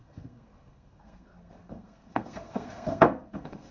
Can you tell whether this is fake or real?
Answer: fake